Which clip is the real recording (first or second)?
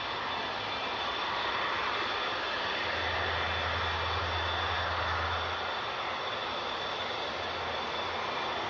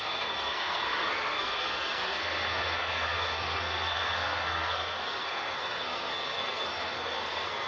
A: first